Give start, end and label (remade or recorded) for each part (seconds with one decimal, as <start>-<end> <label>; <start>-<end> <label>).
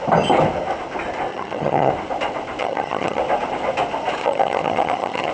0.0-1.3 recorded; 1.3-1.9 remade; 1.9-2.6 recorded; 2.6-3.2 remade; 3.2-4.2 recorded; 4.2-5.3 remade